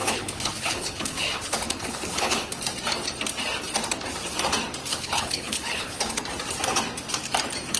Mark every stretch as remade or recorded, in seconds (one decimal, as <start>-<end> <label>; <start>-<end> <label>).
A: 0.0-2.6 remade; 2.6-4.9 recorded; 4.9-6.2 remade; 6.2-7.8 recorded

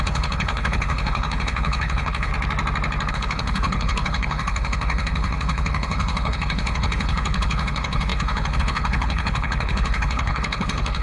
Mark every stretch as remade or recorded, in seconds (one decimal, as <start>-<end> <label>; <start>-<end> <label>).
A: 0.0-2.3 remade; 2.3-3.1 recorded; 3.1-11.0 remade

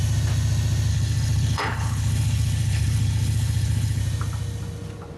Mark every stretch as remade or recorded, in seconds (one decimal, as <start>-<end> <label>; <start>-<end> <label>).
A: 0.0-0.9 recorded; 0.9-4.0 remade; 4.0-5.2 recorded

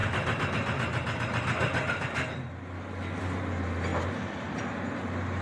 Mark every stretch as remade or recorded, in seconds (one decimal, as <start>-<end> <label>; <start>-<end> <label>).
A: 0.0-5.4 recorded

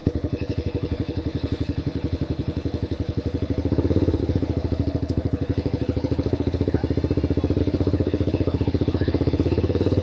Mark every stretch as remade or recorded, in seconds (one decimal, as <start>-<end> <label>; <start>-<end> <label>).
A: 0.0-6.8 remade; 6.8-7.6 recorded; 7.6-10.0 remade

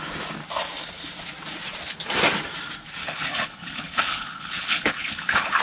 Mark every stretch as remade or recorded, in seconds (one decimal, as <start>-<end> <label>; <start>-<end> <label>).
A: 0.0-3.0 recorded; 3.0-5.6 remade